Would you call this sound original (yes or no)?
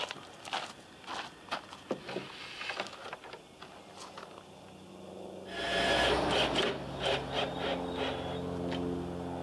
yes